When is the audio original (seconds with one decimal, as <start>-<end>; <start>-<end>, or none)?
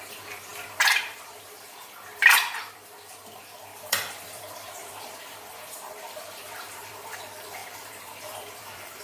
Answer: none